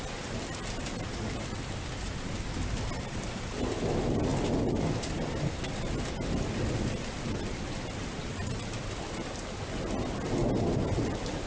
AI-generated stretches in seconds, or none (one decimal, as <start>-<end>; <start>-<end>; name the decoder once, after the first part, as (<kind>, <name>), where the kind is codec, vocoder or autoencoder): none